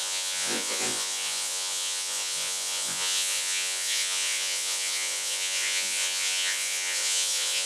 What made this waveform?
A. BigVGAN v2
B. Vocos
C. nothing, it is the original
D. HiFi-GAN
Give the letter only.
B